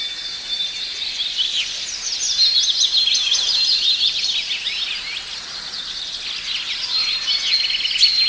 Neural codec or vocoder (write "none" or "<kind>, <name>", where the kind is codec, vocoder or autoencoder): none